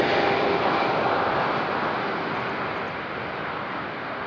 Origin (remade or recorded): recorded